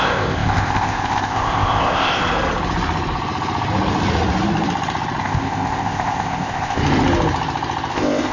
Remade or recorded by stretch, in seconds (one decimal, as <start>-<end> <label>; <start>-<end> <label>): 0.0-2.2 remade; 2.2-5.2 recorded; 5.2-6.8 remade; 6.8-7.9 recorded; 7.9-8.3 remade